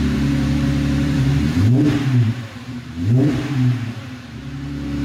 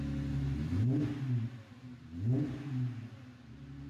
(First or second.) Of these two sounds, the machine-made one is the first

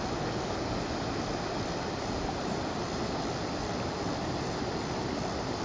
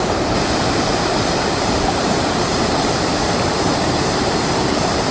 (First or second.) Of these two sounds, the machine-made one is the second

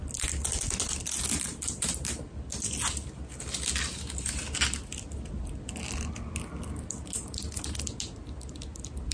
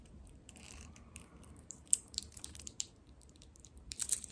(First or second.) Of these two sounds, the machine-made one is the second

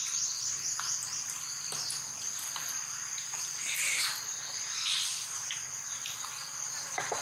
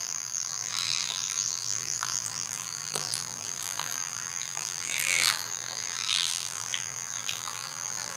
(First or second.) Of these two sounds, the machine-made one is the second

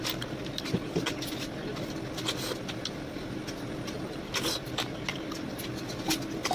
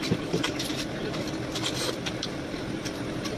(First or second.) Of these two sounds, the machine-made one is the second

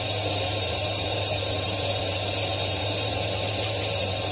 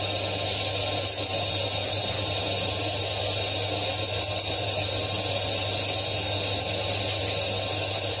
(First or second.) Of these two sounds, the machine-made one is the first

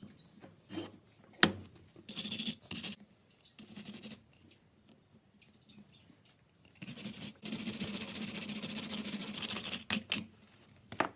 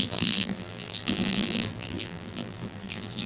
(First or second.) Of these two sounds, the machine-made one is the second